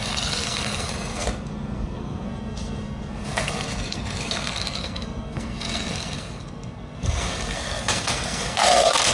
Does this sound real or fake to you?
fake